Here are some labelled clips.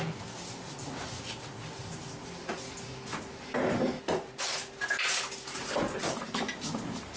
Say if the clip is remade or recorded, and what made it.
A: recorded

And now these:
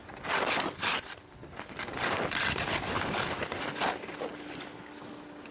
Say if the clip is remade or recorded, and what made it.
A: recorded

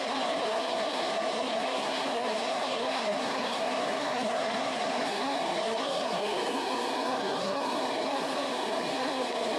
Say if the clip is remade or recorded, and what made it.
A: remade, codec, SNAC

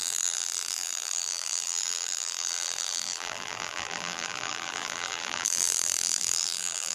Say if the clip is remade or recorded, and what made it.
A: remade, vocoder, BigVGAN v2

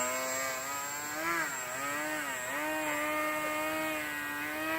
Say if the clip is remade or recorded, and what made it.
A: recorded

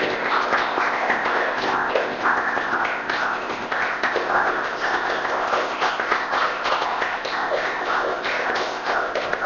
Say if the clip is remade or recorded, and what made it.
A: remade, codec, ZipCodec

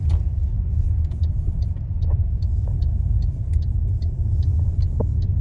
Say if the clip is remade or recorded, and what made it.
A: recorded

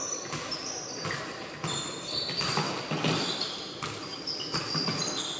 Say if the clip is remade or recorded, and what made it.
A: recorded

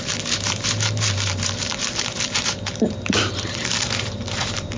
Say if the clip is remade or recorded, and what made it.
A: remade, vocoder, BigVGAN v2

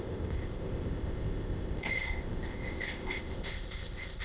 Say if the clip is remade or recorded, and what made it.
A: remade, codec, ZipCodec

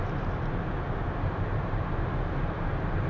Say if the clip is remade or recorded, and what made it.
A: remade, vocoder, BigVGAN v2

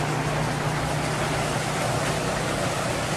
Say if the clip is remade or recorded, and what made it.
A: recorded